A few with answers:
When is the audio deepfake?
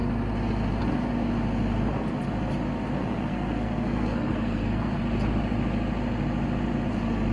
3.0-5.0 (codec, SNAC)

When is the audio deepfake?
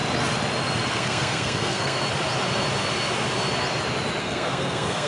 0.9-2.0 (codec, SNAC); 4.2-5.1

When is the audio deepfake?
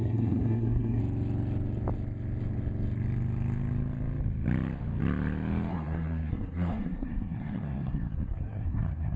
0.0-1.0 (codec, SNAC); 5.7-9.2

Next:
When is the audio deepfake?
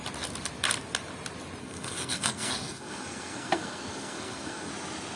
1.6-4.7 (codec, SNAC)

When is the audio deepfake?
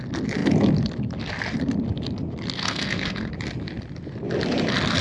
2.6-3.3 (codec, SNAC)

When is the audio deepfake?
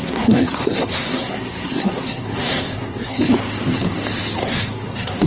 0.0-3.2 (codec, SNAC); 4.4-5.3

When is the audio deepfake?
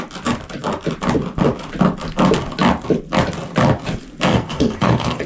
4.3-5.3 (codec, SNAC)